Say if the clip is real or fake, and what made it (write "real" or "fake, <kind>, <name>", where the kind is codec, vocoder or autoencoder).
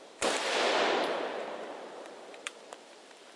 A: fake, vocoder, BigVGAN v2